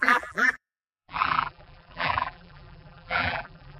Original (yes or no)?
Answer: no